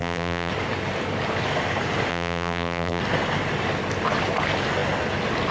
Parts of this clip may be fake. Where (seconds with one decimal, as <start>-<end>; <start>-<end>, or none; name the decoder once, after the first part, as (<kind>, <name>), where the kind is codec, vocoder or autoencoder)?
0.0-0.5 (vocoder, BigVGAN v2); 2.1-3.0